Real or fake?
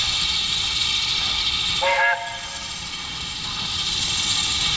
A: real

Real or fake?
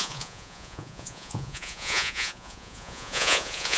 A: fake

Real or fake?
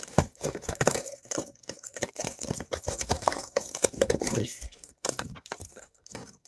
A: fake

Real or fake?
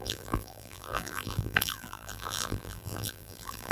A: fake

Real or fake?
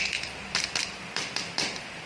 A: real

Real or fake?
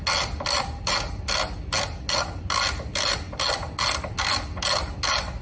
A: real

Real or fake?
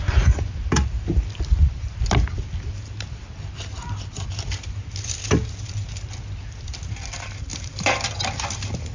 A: real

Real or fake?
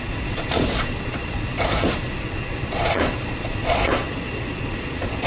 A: fake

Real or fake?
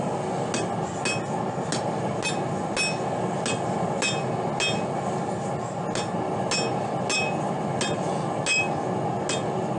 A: real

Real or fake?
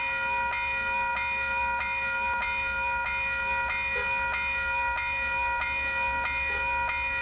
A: real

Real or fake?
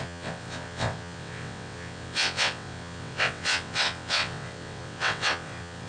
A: fake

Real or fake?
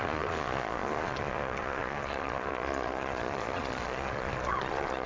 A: fake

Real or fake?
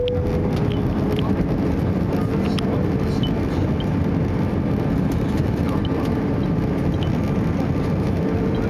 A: real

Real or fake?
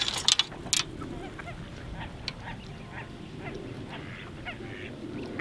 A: real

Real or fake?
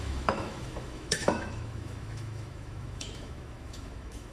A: fake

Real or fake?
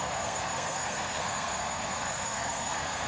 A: fake